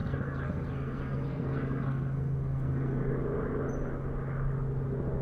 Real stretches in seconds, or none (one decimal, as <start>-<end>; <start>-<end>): 3.1-5.2